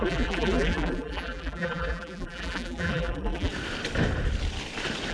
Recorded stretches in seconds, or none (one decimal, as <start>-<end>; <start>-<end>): 3.5-5.1